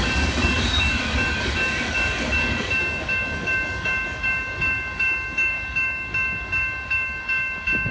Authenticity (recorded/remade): remade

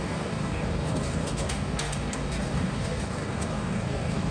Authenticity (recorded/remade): remade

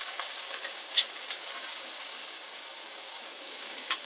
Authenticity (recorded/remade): remade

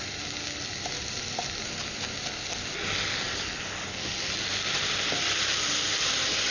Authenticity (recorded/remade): recorded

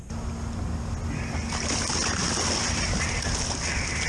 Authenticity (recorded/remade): recorded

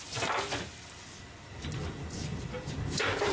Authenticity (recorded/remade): recorded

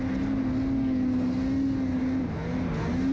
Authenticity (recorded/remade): recorded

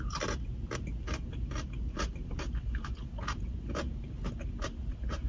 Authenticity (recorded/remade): recorded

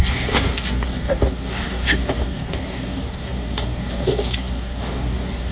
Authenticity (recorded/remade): remade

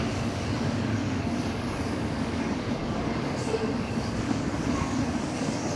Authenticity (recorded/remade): remade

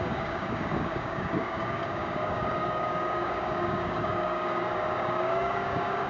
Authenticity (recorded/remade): remade